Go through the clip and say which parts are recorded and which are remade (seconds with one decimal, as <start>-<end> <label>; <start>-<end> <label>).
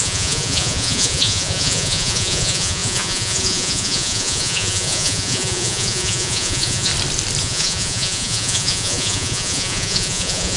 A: 0.0-6.9 remade; 6.9-7.4 recorded; 7.4-10.6 remade